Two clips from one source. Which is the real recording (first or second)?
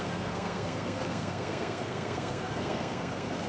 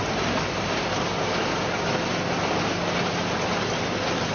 second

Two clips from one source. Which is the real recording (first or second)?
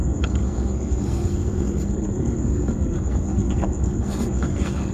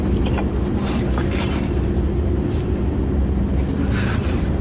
second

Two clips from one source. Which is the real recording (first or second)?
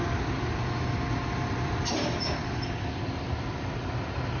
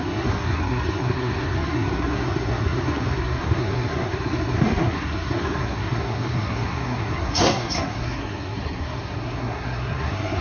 first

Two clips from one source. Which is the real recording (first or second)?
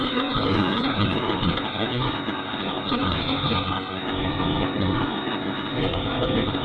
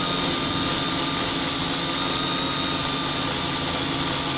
second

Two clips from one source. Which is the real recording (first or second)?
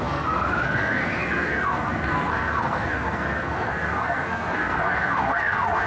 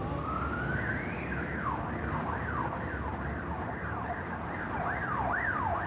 second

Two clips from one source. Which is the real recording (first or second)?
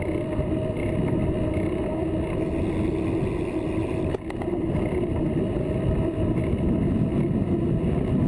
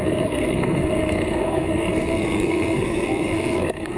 first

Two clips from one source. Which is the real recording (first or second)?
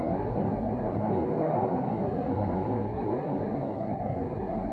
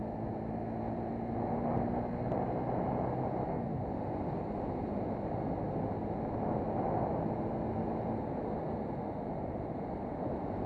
second